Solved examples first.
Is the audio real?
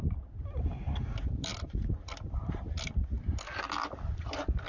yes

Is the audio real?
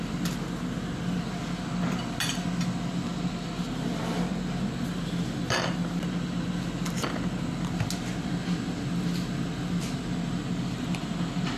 yes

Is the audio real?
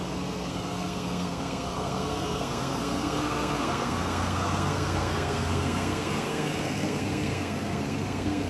no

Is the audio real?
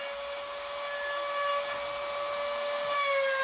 yes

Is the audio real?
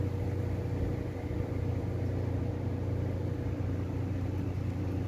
yes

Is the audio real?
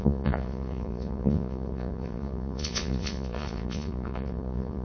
no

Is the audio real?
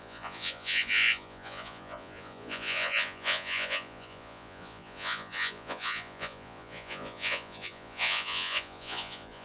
no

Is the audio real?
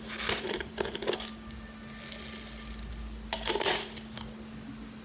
yes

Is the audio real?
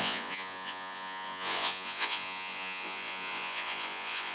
no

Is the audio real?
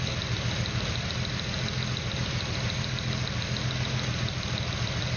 yes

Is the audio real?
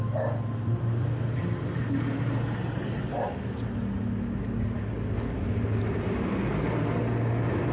yes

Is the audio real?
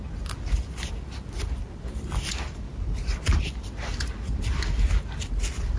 yes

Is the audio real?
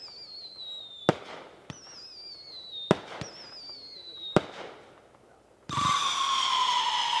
yes